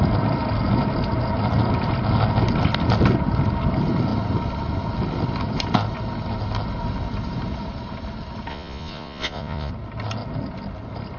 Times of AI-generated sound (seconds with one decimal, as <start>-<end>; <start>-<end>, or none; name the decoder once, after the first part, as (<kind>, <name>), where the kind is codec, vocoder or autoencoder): 8.5-9.7 (vocoder, Vocos)